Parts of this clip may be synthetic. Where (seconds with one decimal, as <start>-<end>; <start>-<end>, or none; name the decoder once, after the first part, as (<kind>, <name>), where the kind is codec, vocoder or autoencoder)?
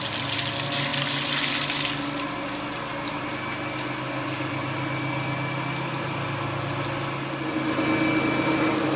none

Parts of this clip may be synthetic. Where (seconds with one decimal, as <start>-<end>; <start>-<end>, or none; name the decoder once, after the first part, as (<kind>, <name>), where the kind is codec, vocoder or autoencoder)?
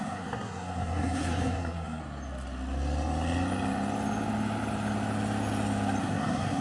0.0-2.0 (codec, SNAC); 6.0-6.6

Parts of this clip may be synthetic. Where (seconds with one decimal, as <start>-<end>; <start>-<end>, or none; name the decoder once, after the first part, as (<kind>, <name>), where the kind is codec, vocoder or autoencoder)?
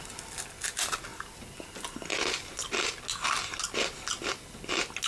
none